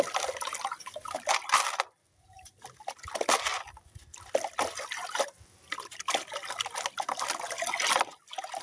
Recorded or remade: recorded